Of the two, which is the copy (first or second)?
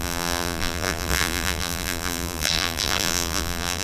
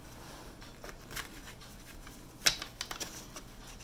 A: first